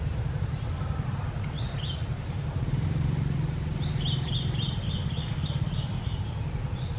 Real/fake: real